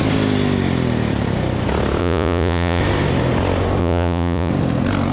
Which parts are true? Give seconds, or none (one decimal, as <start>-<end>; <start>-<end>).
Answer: 0.0-2.0; 2.8-3.8; 4.5-5.1